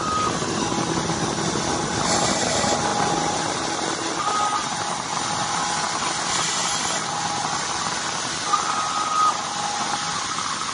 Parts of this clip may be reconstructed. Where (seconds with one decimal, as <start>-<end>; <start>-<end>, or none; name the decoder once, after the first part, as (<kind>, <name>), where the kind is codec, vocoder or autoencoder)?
none